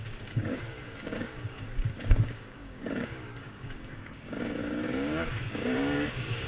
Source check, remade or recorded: remade